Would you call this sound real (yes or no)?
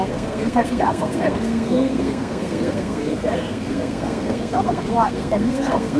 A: no